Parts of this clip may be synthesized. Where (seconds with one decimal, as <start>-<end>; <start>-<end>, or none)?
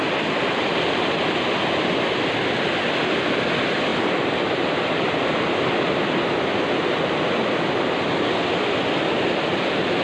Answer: none